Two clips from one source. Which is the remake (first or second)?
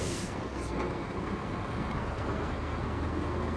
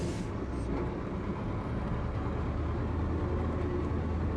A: first